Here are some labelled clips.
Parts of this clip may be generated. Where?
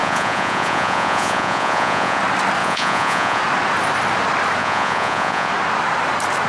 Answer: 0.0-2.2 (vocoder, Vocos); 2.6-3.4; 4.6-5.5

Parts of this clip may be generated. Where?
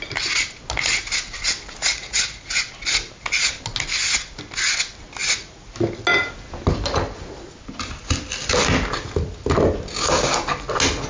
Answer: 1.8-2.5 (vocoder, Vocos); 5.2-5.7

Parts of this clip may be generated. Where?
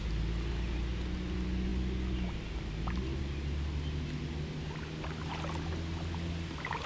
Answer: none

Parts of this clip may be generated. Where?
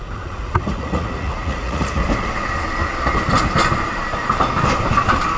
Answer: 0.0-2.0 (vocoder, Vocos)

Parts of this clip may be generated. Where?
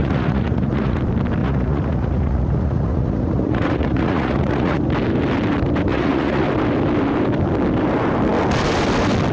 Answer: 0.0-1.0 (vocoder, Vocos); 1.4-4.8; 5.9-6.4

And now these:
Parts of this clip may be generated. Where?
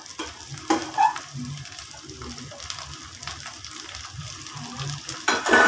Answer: none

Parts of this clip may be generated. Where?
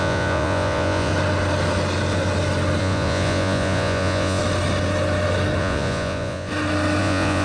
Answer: 0.0-1.1 (vocoder, Vocos); 2.8-4.4; 5.6-6.5; 7.0-7.4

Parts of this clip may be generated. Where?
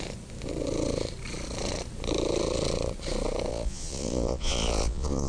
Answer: 3.5-5.3 (vocoder, Vocos)